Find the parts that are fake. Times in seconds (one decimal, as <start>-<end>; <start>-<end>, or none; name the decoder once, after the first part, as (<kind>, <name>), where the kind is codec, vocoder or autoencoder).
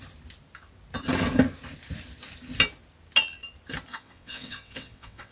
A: 3.9-5.3 (vocoder, WaveNeXt)